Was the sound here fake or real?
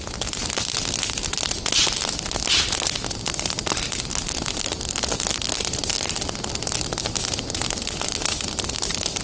real